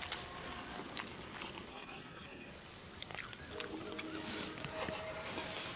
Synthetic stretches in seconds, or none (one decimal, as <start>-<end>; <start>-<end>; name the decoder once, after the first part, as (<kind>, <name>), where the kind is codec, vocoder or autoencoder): 1.7-2.5 (codec, SNAC)